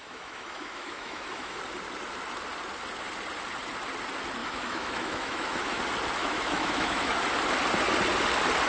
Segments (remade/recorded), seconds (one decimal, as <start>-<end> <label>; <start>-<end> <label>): 0.0-1.6 remade; 1.6-4.4 recorded; 4.4-5.8 remade; 5.8-6.2 recorded; 6.2-7.2 remade; 7.2-8.7 recorded